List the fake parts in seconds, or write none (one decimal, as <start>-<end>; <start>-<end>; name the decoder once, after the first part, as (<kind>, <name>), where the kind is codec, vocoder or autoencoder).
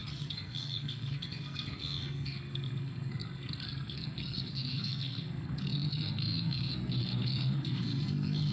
0.0-8.5 (codec, SNAC)